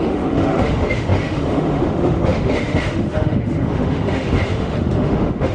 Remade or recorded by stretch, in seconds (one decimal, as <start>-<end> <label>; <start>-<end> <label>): 0.0-5.5 remade